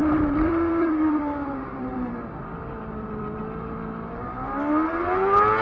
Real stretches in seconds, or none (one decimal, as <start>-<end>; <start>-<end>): 3.4-5.6